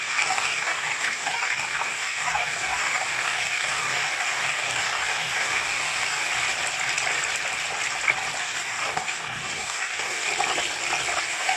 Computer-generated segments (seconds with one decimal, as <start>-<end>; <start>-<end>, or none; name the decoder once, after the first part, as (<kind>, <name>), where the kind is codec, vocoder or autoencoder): 0.0-6.3 (codec, DAC); 8.4-10.3; 11.2-11.6